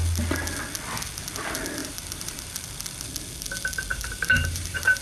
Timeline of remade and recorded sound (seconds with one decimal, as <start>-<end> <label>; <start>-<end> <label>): 0.0-1.8 recorded; 1.8-2.5 remade; 2.5-3.9 recorded; 3.9-5.0 remade